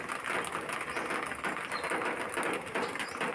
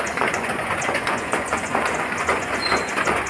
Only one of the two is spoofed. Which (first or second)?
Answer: second